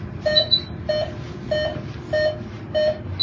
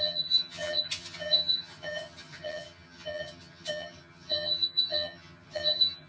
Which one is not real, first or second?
second